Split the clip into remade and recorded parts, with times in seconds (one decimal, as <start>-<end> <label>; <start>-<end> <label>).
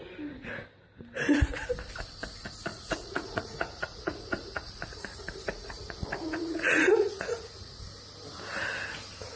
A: 0.0-2.7 recorded; 2.7-7.8 remade; 7.8-9.4 recorded